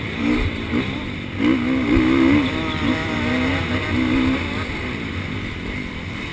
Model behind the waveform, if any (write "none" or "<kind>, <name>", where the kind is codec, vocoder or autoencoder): none